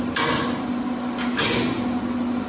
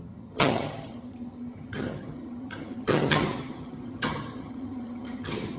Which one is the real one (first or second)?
first